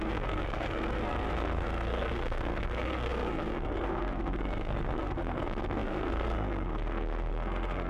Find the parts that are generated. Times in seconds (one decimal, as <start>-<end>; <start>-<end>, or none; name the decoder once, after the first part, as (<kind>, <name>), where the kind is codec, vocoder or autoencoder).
0.0-7.9 (codec, SNAC)